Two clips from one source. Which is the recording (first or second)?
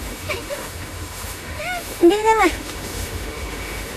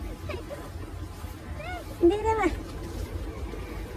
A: second